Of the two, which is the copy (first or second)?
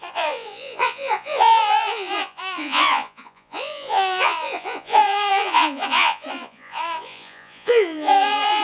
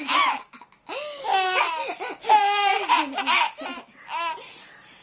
first